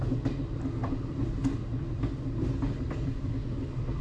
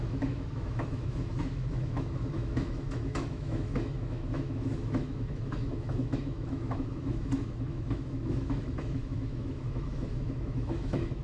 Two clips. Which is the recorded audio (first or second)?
first